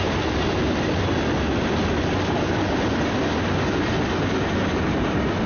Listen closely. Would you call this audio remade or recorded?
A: recorded